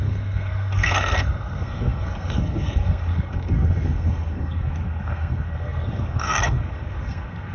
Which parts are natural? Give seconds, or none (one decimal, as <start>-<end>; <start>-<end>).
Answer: none